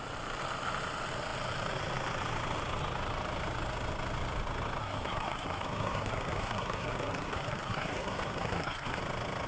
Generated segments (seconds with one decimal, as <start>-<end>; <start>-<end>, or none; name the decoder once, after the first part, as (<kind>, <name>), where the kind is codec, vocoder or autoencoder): 4.8-9.0 (codec, SNAC)